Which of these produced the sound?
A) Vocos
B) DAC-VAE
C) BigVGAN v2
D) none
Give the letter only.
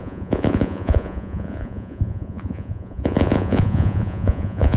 A